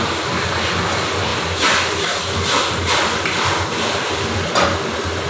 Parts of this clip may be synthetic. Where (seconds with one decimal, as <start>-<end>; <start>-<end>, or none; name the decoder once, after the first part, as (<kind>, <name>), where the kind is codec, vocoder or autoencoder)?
1.3-4.5 (vocoder, BigVGAN v2)